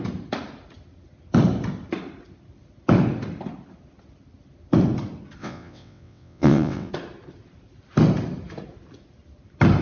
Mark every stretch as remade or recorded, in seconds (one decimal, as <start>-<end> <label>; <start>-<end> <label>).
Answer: 0.0-5.4 recorded; 5.4-6.9 remade; 6.9-9.8 recorded